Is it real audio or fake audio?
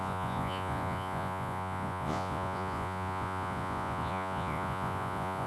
fake